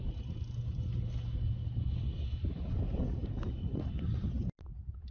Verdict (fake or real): real